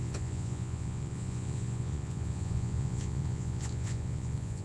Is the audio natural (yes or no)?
no